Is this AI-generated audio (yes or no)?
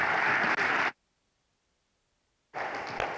no